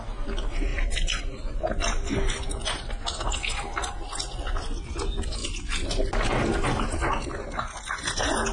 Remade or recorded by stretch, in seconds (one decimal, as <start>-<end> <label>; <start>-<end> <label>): 0.0-8.5 recorded